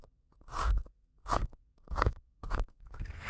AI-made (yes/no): yes